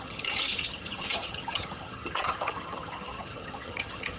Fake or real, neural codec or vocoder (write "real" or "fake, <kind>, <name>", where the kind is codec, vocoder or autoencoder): fake, vocoder, HiFi-GAN